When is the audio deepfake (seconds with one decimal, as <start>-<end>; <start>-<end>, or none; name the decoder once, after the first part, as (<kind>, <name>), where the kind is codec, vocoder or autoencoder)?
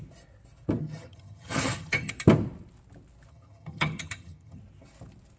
0.8-2.1 (vocoder, HiFi-GAN); 3.3-4.6